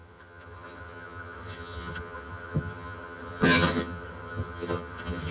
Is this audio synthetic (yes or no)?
yes